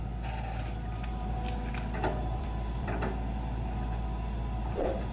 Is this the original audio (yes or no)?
no